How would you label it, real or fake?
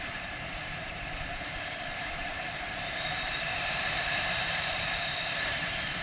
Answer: fake